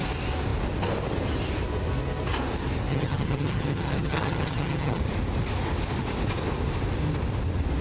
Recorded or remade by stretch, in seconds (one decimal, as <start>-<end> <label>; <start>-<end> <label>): 0.0-2.9 recorded; 2.9-5.0 remade; 5.0-7.8 recorded